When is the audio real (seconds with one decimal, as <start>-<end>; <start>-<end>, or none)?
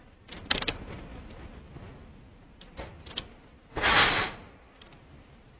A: 0.0-5.6